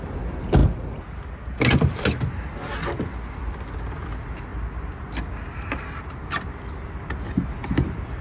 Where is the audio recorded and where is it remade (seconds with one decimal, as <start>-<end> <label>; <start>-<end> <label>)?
0.0-8.2 recorded